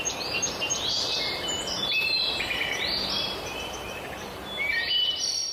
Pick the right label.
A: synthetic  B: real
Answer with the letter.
A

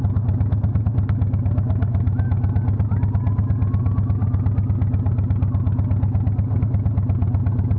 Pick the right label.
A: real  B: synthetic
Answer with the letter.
A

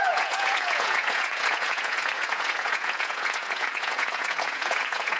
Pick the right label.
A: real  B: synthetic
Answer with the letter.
B